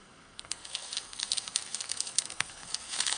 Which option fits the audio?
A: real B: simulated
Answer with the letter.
B